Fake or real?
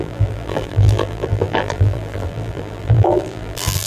fake